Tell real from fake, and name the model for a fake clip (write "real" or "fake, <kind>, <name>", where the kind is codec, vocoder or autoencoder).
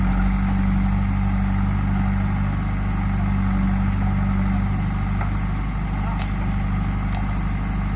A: real